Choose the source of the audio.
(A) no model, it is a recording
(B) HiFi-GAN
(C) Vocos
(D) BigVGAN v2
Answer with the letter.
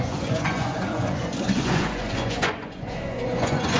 C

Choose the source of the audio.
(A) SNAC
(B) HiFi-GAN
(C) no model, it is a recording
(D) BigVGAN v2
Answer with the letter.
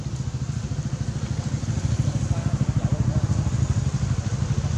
C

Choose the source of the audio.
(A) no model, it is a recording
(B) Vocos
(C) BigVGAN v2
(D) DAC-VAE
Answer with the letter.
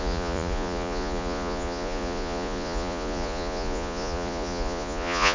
B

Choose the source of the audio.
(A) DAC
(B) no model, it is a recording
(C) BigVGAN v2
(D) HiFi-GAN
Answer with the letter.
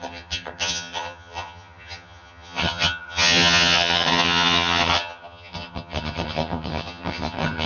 D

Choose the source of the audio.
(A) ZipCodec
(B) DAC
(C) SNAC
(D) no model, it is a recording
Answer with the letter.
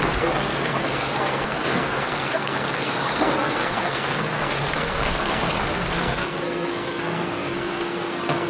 C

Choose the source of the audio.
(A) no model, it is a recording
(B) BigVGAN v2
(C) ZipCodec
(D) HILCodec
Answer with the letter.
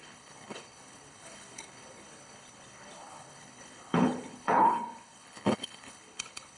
D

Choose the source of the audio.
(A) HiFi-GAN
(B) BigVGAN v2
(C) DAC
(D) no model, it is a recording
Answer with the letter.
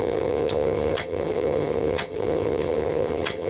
A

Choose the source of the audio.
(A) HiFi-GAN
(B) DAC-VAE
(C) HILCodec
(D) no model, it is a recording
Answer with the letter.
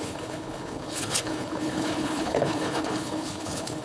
C